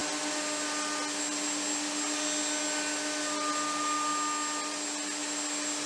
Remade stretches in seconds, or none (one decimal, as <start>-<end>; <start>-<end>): none